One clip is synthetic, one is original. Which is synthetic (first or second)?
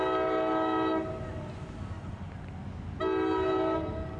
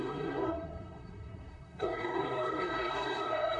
second